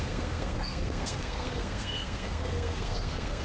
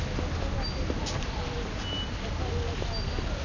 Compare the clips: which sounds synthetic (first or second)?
first